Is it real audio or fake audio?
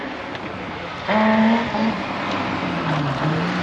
real